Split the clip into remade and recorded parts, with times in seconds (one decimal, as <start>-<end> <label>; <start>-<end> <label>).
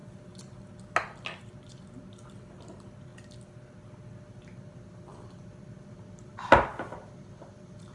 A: 0.0-7.9 recorded